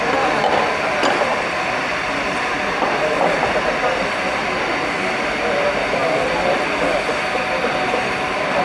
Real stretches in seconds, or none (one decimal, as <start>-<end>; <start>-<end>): 0.0-8.6